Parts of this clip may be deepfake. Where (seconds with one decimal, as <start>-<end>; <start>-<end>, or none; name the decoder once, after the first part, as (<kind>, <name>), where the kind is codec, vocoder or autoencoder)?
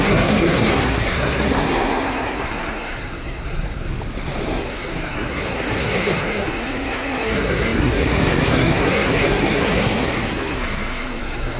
0.0-3.9 (codec, SNAC); 4.5-11.6